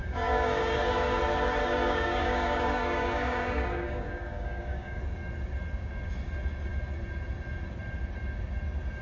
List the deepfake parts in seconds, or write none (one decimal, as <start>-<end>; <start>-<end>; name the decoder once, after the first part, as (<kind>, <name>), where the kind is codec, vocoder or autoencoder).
0.0-1.2 (codec, DAC); 1.6-5.0